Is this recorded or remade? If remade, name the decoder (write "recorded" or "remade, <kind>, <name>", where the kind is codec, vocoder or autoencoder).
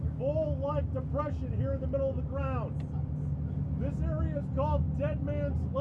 recorded